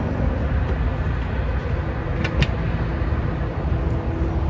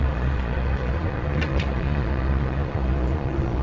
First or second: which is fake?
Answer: second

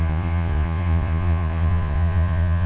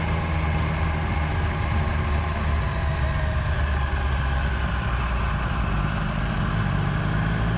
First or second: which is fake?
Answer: first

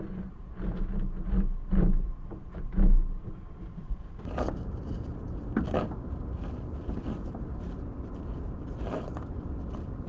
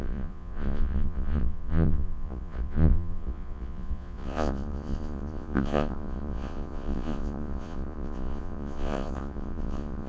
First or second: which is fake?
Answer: second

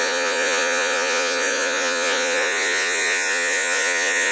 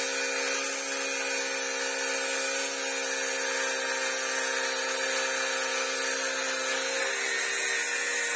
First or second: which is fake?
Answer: first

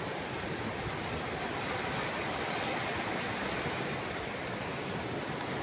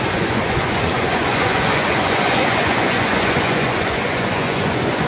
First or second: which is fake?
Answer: second